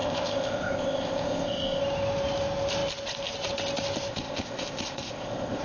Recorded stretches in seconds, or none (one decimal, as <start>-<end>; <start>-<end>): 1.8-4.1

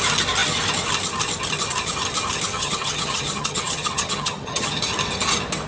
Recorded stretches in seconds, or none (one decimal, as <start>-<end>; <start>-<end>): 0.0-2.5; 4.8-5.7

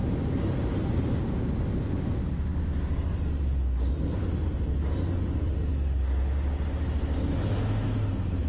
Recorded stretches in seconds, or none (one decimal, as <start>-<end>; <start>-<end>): 1.4-8.5